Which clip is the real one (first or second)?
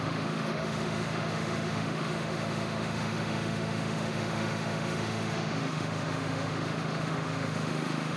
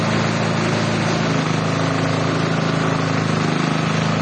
second